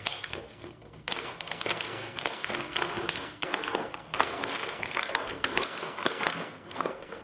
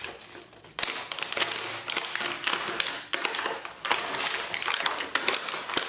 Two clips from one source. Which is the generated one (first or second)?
first